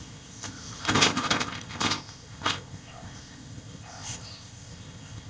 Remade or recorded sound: remade